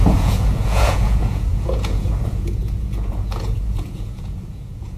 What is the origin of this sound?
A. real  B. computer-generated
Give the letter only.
B